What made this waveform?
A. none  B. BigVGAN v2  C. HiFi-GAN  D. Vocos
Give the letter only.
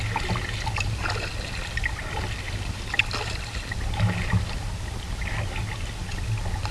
A